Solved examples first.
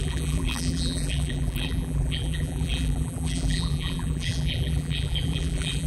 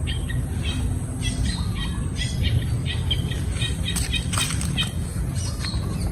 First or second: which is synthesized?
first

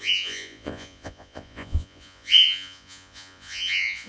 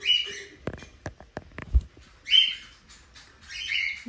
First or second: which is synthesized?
first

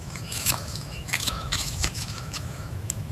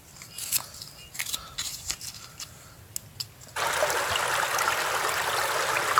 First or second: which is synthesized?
first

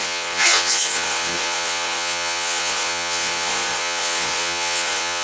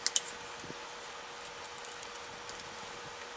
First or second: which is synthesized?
first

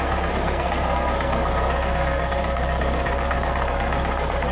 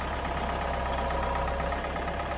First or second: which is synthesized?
first